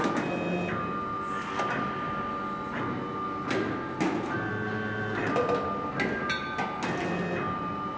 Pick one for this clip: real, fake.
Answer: real